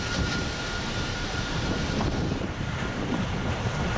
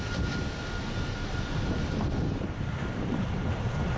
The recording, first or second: second